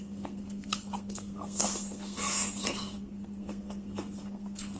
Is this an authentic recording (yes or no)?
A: no